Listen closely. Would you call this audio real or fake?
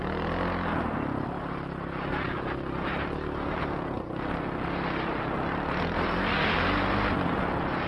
real